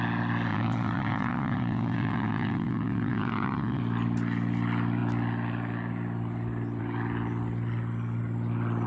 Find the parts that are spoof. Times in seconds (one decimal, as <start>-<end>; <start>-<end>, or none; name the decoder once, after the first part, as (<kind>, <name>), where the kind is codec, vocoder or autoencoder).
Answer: 0.5-3.8 (vocoder, WaveNeXt)